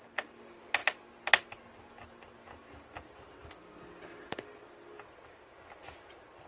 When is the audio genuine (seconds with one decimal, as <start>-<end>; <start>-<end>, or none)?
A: 0.8-1.7